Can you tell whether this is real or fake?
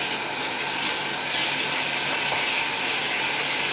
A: real